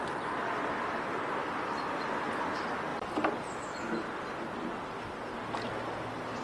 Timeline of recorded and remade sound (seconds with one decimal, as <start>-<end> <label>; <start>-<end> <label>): 0.0-6.4 recorded